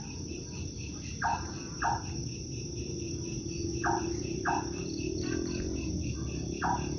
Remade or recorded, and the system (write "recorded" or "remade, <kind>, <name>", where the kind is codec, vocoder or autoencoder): recorded